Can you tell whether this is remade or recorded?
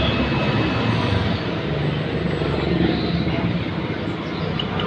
recorded